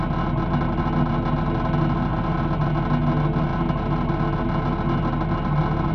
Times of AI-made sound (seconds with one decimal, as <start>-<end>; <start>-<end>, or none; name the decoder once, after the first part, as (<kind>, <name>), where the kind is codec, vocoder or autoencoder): none